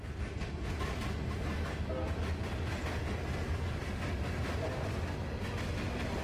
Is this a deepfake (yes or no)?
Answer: no